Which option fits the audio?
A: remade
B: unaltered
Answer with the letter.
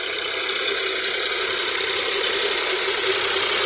B